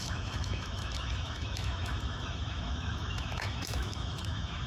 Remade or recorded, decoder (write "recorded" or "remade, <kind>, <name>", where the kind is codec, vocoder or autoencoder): remade, autoencoder, DAC-VAE